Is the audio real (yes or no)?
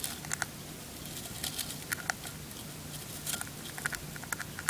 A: yes